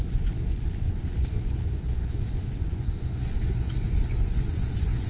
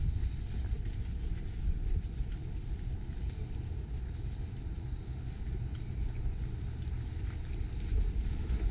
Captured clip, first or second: second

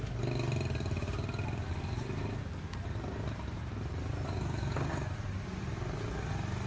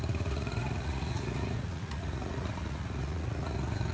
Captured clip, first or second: first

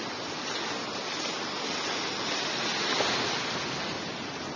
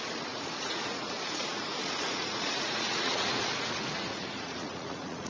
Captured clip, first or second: first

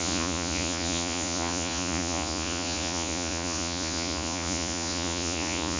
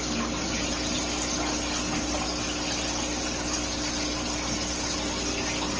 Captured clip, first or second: second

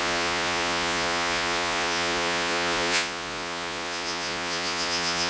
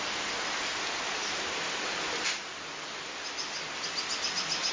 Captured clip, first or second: second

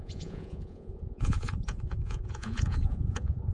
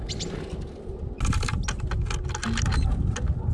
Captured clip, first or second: second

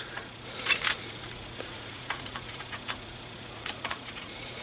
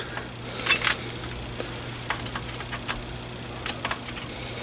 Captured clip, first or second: second